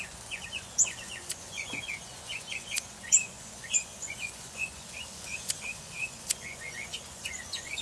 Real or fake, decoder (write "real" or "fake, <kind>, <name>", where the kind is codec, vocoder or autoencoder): fake, vocoder, Vocos